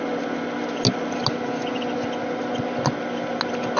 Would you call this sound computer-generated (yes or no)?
no